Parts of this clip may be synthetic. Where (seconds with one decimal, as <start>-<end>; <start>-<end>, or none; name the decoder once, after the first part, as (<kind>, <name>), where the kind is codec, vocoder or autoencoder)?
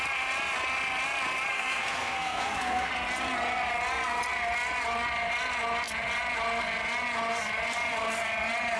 1.5-2.9 (codec, SNAC)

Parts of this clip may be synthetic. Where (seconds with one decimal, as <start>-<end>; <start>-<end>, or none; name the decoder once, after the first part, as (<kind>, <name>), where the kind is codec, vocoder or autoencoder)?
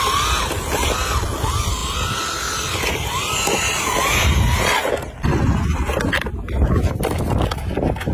none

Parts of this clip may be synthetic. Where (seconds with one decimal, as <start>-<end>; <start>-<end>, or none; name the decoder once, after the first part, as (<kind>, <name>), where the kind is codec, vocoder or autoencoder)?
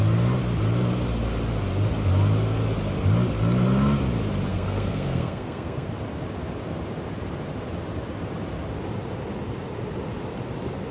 4.5-5.9 (codec, SNAC)